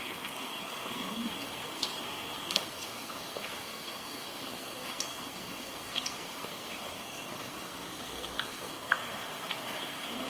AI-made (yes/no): yes